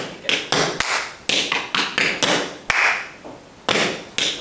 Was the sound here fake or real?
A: real